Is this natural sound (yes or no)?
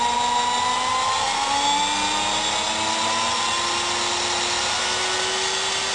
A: yes